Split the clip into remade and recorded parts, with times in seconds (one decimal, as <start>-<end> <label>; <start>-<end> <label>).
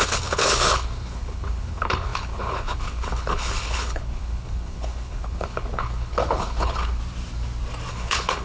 0.0-7.0 remade; 7.0-7.9 recorded; 7.9-8.4 remade